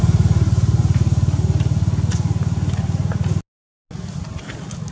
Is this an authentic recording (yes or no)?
yes